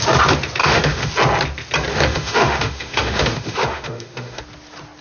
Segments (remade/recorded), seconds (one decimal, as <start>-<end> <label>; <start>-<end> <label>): 0.0-0.6 recorded; 0.6-1.1 remade; 1.1-1.9 recorded; 1.9-4.4 remade; 4.4-5.0 recorded